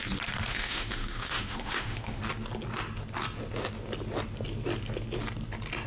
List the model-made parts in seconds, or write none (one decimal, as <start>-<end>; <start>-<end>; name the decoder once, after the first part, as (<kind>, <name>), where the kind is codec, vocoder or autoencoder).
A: 0.5-2.2 (autoencoder, DAC-VAE)